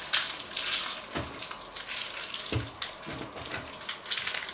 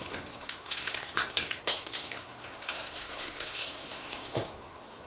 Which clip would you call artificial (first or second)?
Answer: second